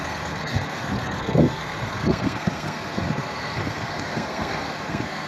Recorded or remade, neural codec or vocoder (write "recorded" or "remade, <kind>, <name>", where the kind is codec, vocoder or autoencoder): remade, codec, SNAC